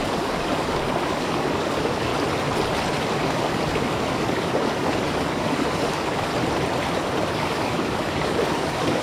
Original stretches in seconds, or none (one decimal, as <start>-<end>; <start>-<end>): 2.1-3.1; 6.3-7.3